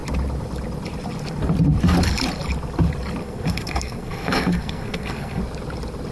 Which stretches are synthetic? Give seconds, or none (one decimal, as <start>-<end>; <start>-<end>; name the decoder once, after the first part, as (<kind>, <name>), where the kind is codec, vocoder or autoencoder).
3.2-5.4 (codec, SNAC)